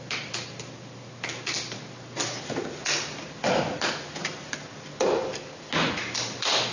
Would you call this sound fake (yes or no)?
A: no